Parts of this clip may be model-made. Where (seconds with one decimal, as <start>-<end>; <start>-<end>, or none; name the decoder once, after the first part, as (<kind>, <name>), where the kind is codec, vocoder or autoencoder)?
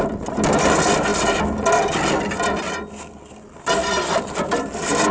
none